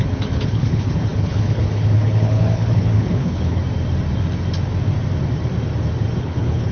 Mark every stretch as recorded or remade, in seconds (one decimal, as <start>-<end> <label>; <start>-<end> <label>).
0.0-3.6 remade; 3.6-6.2 recorded; 6.2-6.7 remade